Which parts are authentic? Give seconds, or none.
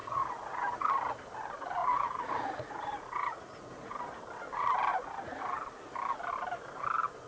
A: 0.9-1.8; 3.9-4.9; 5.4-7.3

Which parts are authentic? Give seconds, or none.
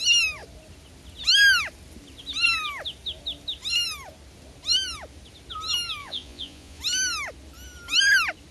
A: 0.0-6.0; 6.8-8.5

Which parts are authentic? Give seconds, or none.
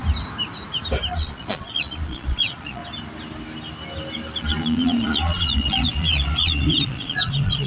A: 0.0-1.1; 2.8-4.4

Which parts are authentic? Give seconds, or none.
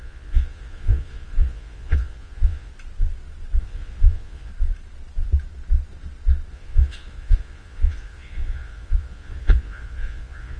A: 2.7-3.6; 4.5-6.5